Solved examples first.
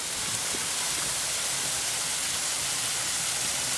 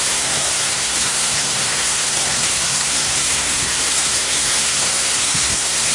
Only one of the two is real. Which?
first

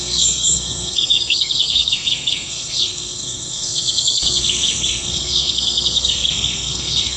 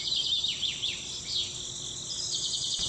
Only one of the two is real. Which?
second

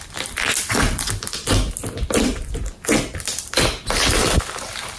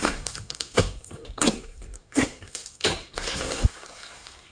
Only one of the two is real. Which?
first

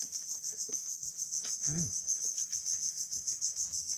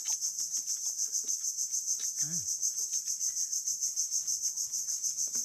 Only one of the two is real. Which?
second